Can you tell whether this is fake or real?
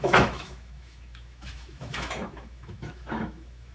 fake